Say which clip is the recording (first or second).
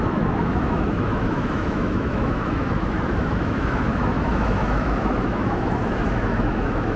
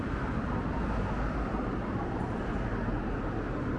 second